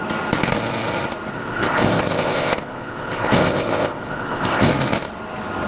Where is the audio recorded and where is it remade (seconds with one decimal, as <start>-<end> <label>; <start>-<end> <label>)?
0.0-1.3 recorded; 1.3-4.7 remade; 4.7-5.7 recorded